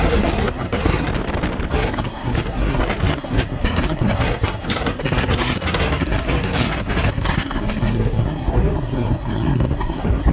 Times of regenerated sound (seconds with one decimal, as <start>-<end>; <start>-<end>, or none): 0.0-1.1; 1.7-10.3